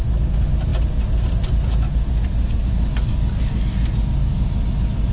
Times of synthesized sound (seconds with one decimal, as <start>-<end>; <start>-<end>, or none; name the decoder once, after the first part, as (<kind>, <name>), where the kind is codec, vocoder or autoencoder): 3.1-3.7 (codec, DAC)